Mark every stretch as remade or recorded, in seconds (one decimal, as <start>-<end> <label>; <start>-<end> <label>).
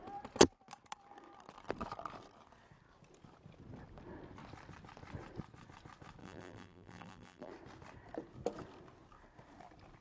0.0-6.2 recorded; 6.2-7.5 remade; 7.5-10.0 recorded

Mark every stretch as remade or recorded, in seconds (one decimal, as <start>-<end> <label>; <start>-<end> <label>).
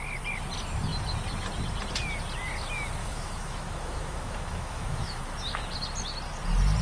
0.0-3.0 recorded; 3.0-5.2 remade; 5.2-6.8 recorded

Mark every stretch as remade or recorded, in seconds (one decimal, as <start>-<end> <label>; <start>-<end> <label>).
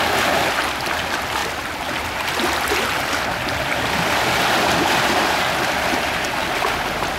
0.0-7.2 recorded